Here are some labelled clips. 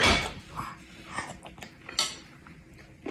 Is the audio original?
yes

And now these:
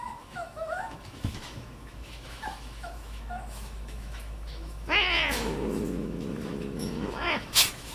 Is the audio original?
no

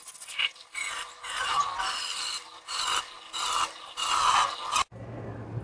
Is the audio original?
yes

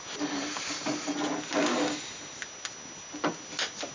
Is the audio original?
yes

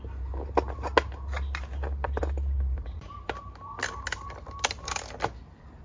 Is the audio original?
yes